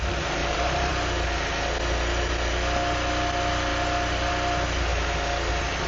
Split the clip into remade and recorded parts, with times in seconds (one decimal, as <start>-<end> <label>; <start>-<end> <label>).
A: 0.0-0.4 recorded; 0.4-0.9 remade; 0.9-5.9 recorded